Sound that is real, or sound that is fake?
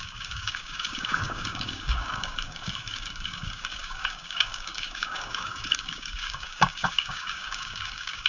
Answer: fake